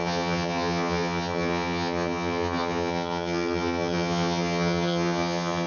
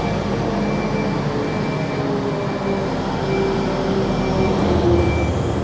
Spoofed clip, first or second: first